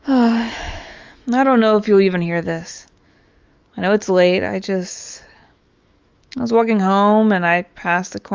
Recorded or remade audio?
remade